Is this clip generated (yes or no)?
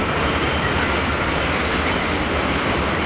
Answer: no